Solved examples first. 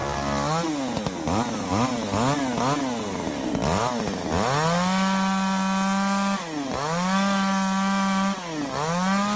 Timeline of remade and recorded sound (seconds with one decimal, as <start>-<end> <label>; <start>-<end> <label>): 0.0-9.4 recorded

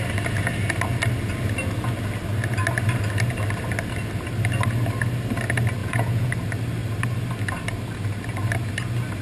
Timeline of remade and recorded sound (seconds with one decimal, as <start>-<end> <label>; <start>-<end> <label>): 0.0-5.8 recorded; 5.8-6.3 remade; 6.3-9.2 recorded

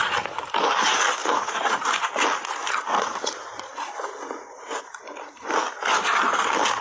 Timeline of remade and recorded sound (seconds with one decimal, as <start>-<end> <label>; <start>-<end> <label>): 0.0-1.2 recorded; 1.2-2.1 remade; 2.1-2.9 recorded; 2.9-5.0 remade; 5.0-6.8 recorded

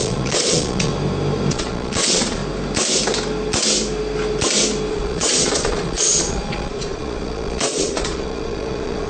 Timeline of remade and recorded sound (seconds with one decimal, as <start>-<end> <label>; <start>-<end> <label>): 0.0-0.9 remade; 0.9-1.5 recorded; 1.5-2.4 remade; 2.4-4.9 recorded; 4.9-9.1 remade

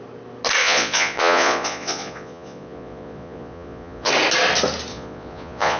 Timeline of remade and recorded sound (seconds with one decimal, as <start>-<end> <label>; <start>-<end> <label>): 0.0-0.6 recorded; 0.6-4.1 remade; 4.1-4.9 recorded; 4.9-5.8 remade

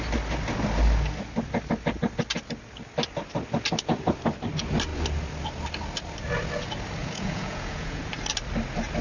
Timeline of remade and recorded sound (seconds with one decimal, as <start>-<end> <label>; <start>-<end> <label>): 0.0-7.0 recorded; 7.0-8.0 remade; 8.0-9.0 recorded

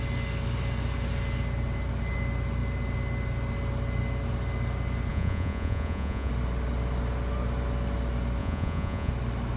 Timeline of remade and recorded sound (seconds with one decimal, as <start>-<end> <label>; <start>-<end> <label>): 0.0-5.1 recorded; 5.1-6.3 remade; 6.3-8.4 recorded; 8.4-9.1 remade; 9.1-9.6 recorded